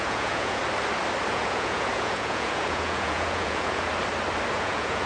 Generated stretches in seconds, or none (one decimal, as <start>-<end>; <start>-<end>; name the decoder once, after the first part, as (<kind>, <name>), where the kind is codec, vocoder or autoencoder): 0.0-0.6 (vocoder, Vocos); 1.3-3.9; 4.5-5.1